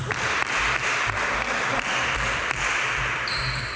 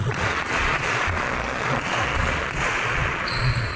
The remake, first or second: second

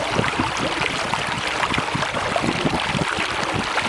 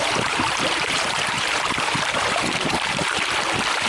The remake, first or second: second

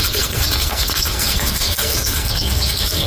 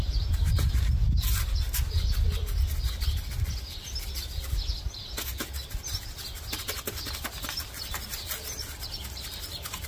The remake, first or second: first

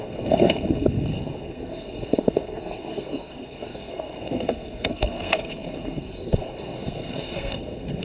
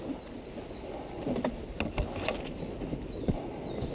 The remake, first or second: first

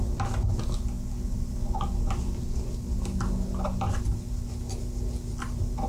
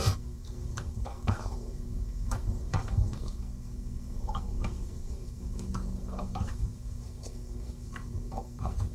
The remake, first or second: second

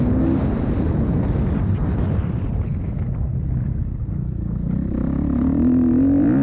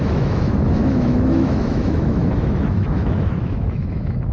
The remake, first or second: second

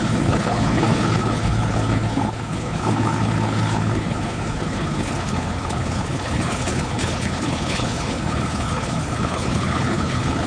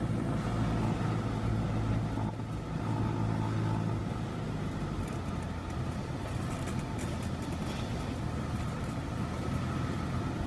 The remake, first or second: first